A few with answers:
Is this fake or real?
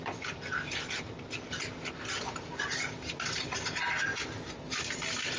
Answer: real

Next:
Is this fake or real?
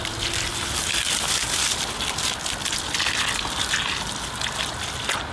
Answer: real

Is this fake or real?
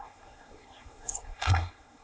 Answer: fake